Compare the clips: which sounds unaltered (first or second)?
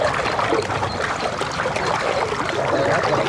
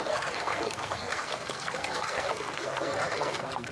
first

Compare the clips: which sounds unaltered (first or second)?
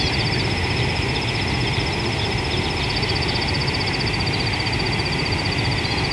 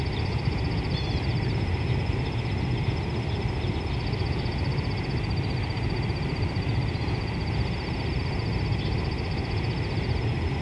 first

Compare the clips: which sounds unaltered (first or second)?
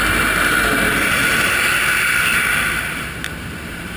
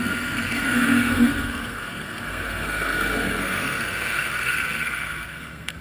first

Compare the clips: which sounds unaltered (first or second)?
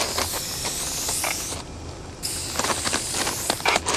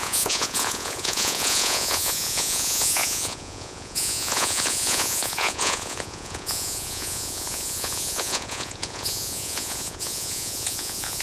first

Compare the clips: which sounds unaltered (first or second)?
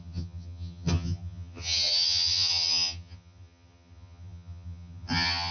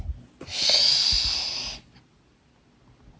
second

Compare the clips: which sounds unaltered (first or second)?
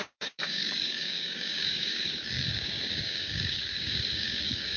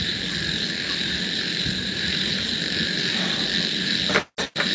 second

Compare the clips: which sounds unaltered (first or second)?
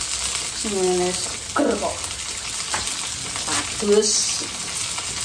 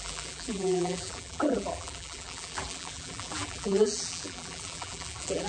first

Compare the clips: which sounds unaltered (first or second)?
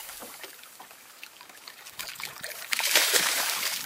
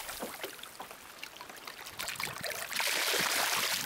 second